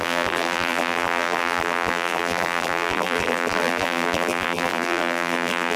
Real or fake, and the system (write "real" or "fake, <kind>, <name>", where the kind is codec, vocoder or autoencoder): fake, vocoder, BigVGAN v2